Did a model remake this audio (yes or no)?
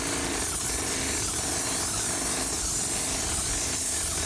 no